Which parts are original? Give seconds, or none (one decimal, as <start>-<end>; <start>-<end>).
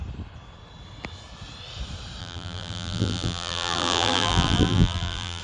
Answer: 0.0-2.2